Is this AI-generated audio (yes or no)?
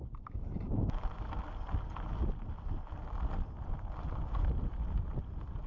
no